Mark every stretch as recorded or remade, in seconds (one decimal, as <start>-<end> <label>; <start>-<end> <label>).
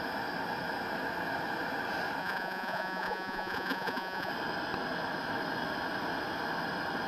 0.0-2.2 recorded; 2.2-4.3 remade; 4.3-7.1 recorded